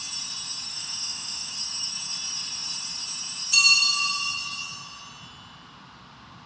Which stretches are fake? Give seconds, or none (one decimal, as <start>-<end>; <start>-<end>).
0.7-1.5